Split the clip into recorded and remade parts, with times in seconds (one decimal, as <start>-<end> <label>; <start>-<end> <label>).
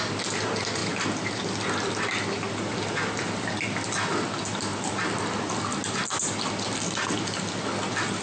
0.0-8.2 recorded